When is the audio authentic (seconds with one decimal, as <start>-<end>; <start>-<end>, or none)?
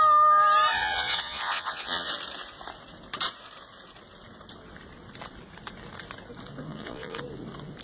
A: 0.0-0.7; 2.1-6.7; 7.2-7.8